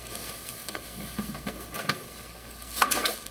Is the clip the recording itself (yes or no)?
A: no